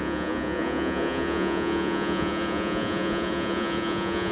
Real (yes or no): no